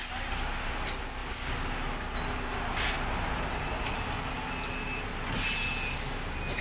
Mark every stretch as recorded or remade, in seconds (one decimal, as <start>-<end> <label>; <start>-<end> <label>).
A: 0.0-6.6 recorded